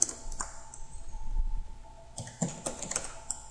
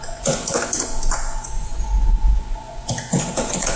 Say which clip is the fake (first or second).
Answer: second